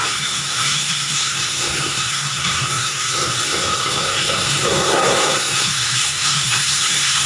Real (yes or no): no